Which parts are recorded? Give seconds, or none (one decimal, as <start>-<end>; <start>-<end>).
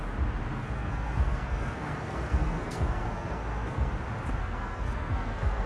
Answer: 0.0-0.5; 3.9-4.4